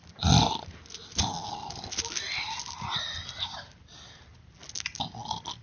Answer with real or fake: real